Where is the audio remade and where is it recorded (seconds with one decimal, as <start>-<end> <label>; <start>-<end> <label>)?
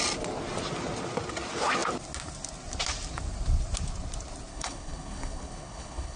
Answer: 0.0-4.5 recorded; 4.5-6.2 remade